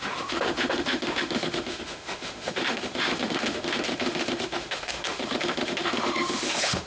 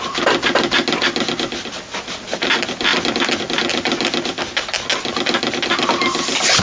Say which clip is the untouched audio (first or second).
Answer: second